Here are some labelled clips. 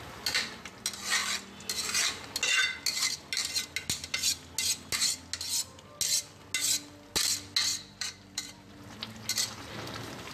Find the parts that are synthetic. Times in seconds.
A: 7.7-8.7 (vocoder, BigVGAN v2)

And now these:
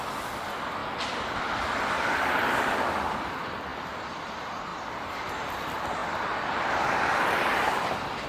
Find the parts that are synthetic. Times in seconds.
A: 0.0-0.8 (vocoder, BigVGAN v2); 1.4-6.0; 6.5-8.3

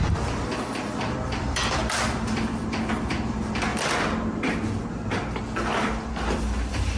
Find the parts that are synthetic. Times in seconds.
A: 0.0-3.7 (vocoder, BigVGAN v2); 5.4-7.0

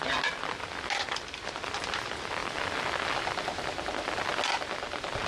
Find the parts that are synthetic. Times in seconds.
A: none

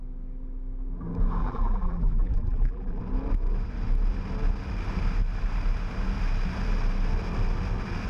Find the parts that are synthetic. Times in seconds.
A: 1.4-3.0 (vocoder, BigVGAN v2)